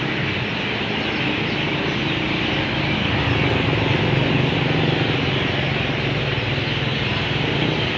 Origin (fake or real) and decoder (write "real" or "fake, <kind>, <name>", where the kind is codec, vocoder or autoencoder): real